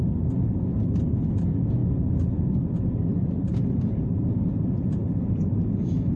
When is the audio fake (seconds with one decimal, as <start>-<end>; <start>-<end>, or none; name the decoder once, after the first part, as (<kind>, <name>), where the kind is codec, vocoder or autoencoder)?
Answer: 1.8-2.4 (vocoder, BigVGAN v2); 3.1-4.0